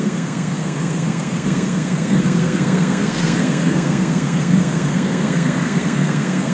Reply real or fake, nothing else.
fake